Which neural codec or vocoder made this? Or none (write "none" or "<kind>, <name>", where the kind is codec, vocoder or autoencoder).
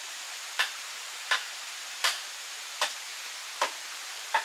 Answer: vocoder, BigVGAN v2